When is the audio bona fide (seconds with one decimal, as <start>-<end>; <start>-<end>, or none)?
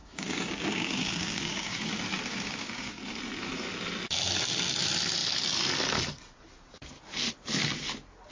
1.9-2.3; 3.0-8.3